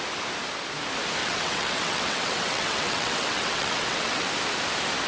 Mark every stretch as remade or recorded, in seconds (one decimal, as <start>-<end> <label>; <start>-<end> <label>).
0.0-1.2 recorded; 1.2-4.3 remade; 4.3-5.1 recorded